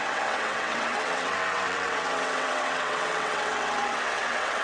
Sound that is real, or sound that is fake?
fake